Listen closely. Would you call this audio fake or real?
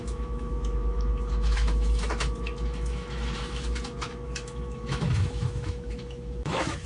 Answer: fake